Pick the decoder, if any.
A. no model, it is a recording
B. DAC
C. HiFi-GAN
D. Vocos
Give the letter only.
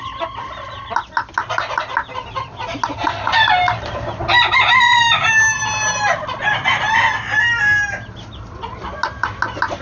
A